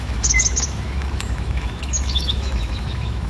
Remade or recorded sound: remade